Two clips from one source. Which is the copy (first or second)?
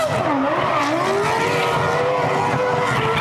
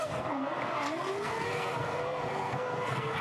second